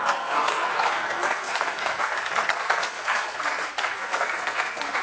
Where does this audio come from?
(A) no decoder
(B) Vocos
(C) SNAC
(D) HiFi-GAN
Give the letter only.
C